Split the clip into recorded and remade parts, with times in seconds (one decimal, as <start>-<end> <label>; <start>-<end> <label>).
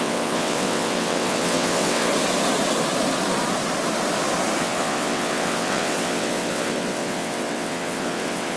0.0-2.1 remade; 2.1-4.6 recorded; 4.6-8.6 remade